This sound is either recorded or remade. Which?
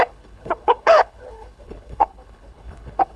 remade